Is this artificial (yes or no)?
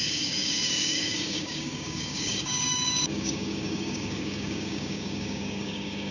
yes